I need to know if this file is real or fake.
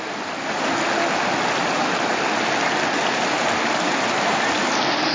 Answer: real